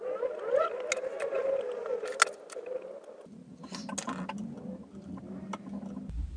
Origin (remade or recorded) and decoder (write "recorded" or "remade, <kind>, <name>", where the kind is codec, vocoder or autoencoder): recorded